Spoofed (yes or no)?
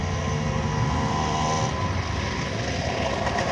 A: no